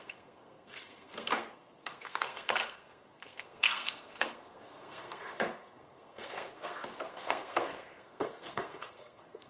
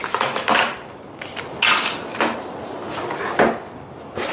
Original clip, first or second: second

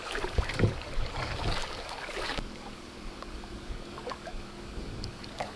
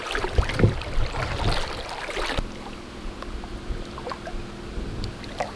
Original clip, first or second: second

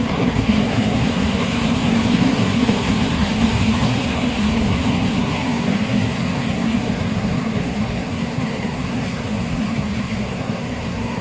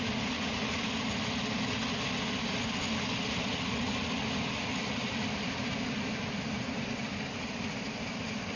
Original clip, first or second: second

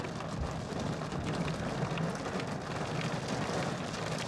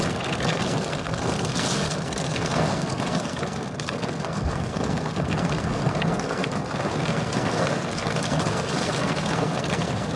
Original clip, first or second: first